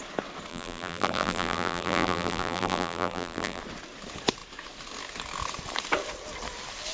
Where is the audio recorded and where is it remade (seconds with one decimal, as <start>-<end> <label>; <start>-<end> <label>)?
0.0-0.5 recorded; 0.5-3.6 remade; 3.6-6.9 recorded